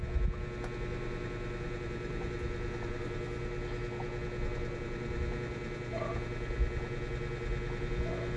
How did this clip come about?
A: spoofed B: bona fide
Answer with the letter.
B